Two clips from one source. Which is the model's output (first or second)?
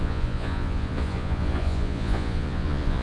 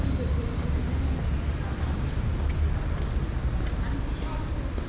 first